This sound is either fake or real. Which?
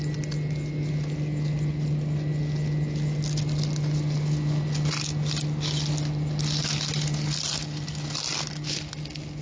real